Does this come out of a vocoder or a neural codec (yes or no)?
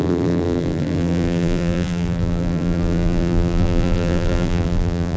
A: yes